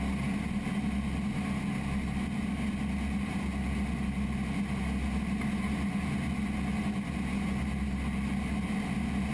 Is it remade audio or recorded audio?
recorded